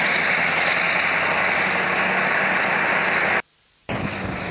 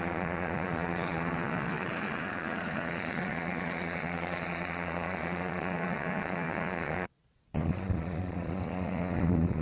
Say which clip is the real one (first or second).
first